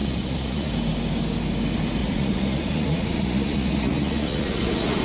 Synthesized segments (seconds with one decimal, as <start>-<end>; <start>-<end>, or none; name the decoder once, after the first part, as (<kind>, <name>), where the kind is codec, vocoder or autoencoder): 0.0-0.7 (vocoder, Vocos); 2.0-5.0